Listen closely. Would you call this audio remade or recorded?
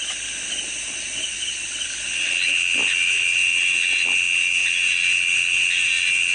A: recorded